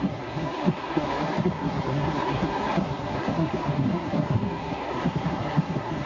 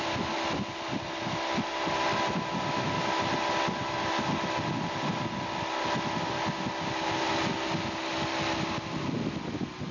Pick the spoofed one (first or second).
first